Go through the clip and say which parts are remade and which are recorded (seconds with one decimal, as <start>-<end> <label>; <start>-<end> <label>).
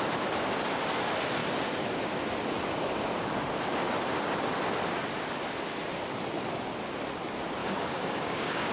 0.0-7.6 recorded; 7.6-8.7 remade